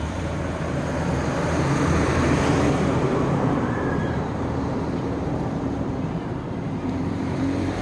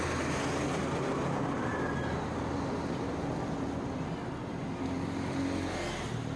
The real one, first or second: second